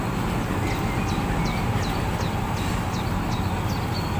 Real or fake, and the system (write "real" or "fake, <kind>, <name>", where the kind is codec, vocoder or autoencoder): real